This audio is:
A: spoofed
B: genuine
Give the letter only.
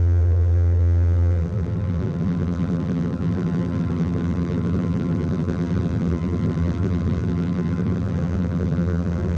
A